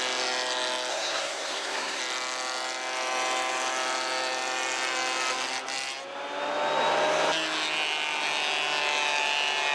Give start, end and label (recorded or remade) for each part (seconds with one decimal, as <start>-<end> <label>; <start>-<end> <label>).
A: 0.0-0.9 recorded; 0.9-2.0 remade; 2.0-9.7 recorded